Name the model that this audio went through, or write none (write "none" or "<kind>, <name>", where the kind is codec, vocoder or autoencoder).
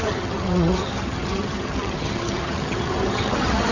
vocoder, HiFi-GAN